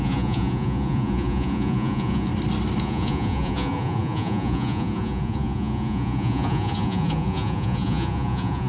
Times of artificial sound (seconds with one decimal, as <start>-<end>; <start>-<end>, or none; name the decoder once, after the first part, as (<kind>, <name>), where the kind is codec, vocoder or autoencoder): 0.0-2.3 (vocoder, Vocos); 2.8-8.7